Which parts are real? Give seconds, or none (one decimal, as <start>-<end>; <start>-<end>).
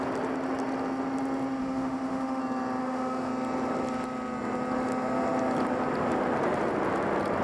0.0-1.6; 2.4-2.8; 3.3-7.4